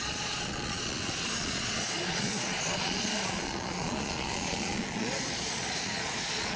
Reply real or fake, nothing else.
fake